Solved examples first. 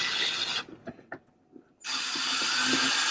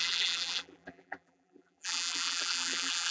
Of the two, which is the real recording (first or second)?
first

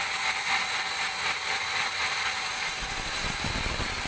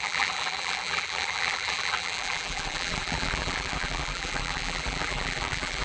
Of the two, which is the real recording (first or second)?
first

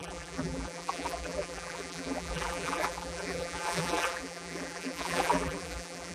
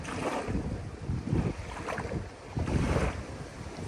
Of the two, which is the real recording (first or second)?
second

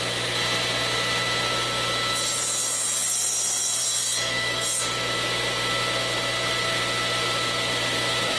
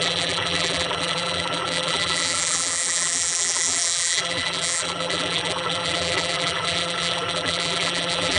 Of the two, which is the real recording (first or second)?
first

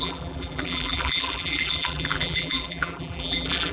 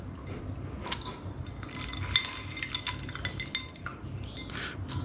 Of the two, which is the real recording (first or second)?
second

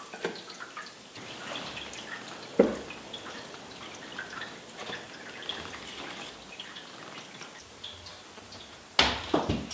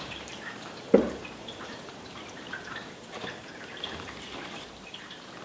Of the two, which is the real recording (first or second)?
first